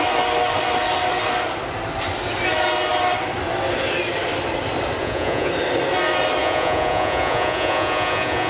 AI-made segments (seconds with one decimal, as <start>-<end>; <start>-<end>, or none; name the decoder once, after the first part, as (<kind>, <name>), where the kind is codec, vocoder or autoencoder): 5.0-5.5 (vocoder, Vocos); 6.4-8.5